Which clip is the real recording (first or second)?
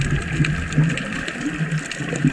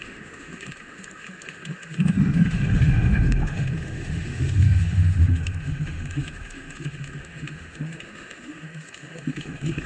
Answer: first